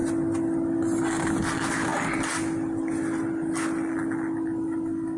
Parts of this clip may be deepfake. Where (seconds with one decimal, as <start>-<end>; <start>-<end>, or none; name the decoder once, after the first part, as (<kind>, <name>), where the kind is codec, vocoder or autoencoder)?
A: none